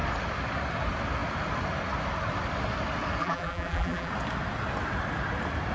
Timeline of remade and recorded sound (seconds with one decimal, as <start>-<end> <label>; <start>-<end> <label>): 0.0-3.2 recorded; 3.2-4.1 remade; 4.1-5.7 recorded